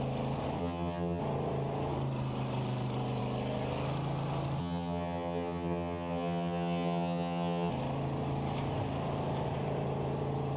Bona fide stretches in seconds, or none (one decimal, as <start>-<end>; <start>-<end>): 0.0-0.6; 1.2-4.6; 7.7-10.6